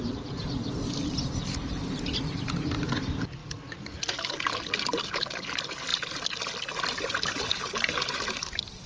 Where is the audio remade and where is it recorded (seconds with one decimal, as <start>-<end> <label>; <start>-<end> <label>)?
0.0-8.9 recorded